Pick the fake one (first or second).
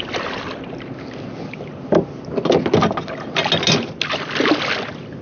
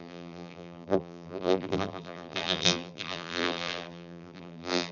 second